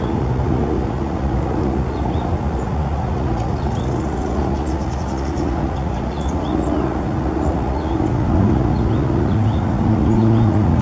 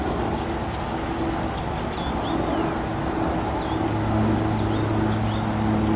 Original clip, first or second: second